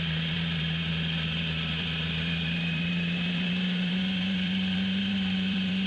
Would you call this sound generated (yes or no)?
yes